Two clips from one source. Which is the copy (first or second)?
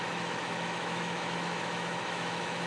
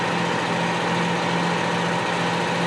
first